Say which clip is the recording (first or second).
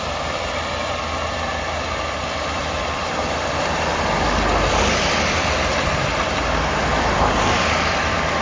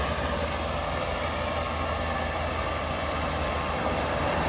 second